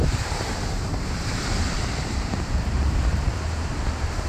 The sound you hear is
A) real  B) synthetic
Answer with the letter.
B